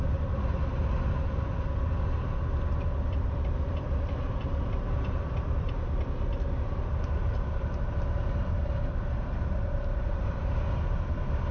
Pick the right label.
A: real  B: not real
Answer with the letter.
B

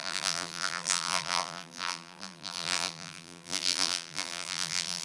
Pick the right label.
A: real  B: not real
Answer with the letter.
B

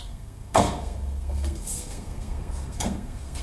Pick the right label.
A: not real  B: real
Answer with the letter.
A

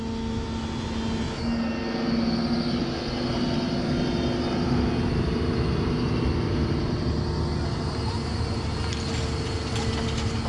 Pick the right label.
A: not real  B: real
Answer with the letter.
B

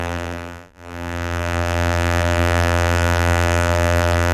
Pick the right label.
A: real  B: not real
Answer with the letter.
B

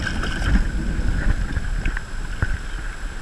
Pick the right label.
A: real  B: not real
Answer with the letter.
A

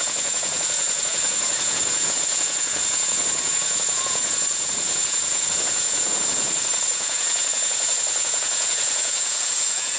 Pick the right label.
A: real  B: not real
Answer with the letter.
B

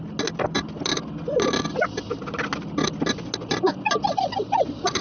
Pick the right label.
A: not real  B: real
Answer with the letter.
B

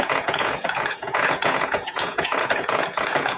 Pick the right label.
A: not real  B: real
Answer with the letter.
A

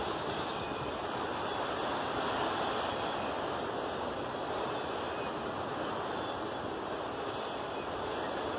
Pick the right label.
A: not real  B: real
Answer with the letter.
B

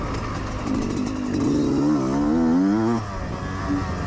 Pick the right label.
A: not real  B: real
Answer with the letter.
B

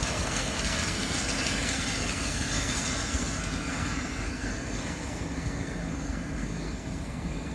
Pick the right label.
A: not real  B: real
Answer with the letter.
A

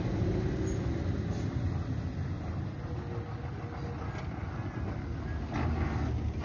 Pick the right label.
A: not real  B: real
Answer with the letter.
B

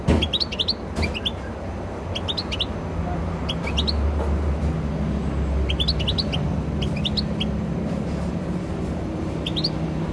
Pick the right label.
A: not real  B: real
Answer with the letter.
B